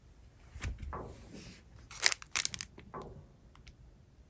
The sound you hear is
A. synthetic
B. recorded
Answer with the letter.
B